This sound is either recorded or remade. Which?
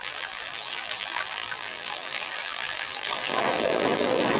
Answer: remade